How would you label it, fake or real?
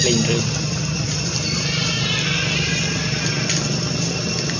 real